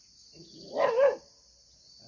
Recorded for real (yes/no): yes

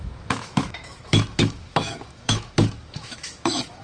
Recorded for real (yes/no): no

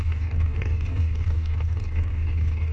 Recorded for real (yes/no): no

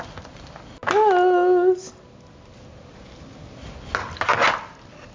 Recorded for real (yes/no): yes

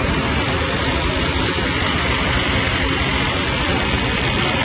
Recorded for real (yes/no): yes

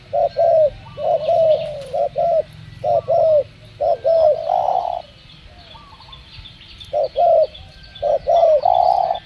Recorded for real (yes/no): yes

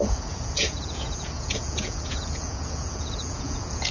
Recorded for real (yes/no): no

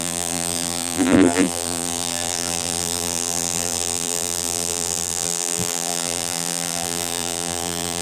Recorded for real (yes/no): no